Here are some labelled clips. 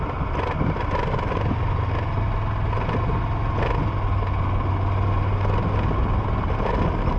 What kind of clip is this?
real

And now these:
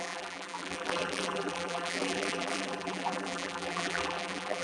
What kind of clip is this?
fake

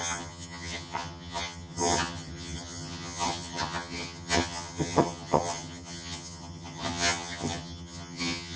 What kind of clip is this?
fake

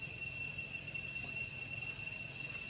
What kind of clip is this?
real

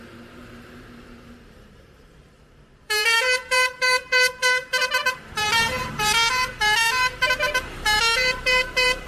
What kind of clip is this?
fake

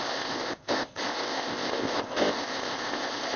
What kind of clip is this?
fake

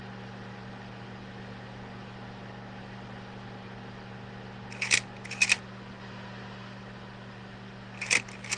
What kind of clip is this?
real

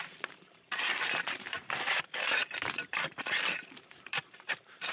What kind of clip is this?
fake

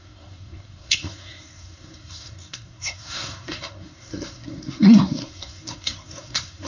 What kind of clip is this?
fake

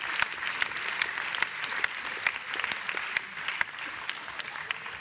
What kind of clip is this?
real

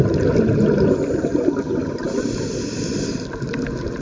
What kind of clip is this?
real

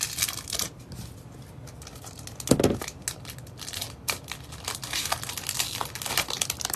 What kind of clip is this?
real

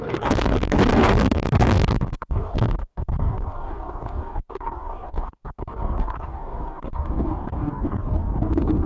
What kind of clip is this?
fake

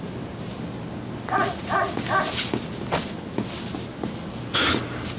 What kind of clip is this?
real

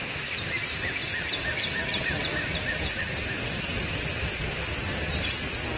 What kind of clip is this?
real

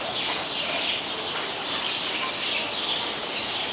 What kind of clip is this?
real